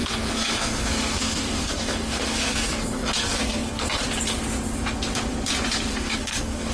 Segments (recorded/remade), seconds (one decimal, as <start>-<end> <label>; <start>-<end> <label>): 0.0-4.0 remade; 4.0-5.9 recorded; 5.9-6.7 remade